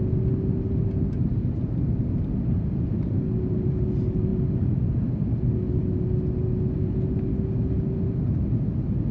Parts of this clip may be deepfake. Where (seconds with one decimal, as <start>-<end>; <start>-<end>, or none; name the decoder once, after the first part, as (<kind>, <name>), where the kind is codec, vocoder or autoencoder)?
none